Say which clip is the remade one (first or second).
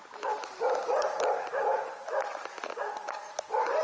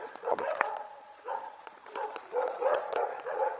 second